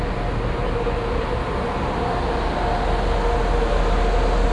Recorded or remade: recorded